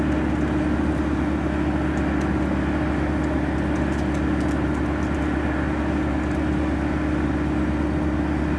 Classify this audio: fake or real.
real